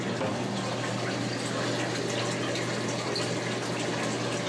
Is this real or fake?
real